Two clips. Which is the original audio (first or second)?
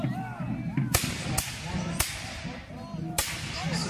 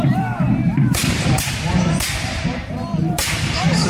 first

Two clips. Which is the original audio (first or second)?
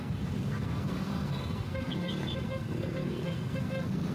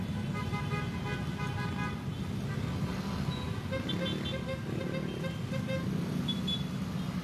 second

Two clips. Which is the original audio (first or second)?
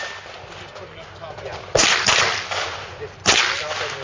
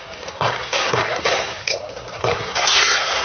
first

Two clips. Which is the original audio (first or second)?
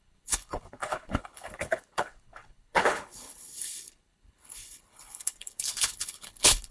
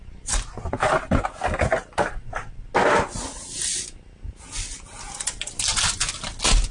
second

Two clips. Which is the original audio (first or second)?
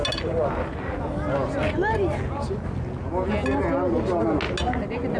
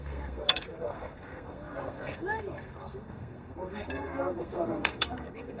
first